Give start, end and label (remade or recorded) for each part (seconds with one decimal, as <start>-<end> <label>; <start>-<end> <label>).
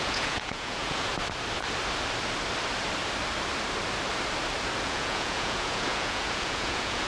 0.0-1.1 remade; 1.1-4.8 recorded; 4.8-7.1 remade